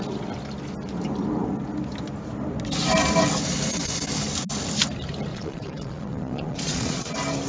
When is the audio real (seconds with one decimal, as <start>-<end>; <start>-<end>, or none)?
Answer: 0.0-5.3; 7.1-7.5